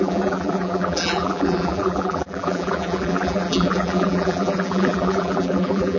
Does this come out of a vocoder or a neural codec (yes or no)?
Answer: yes